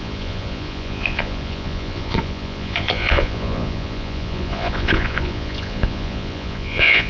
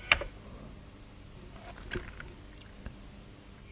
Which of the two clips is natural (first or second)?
second